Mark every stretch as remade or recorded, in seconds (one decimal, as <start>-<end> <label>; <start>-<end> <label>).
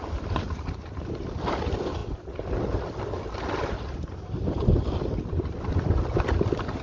0.0-6.8 recorded